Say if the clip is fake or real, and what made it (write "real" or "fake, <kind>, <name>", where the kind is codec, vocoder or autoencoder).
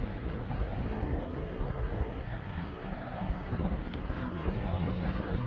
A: fake, codec, SNAC